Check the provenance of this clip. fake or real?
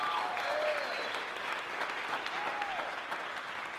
real